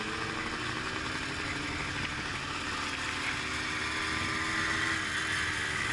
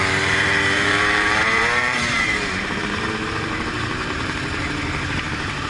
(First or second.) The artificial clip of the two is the second